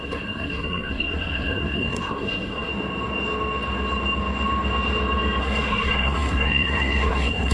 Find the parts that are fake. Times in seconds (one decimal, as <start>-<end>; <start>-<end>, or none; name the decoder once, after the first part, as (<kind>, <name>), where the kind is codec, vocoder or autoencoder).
0.0-2.7 (codec, SNAC); 5.4-7.5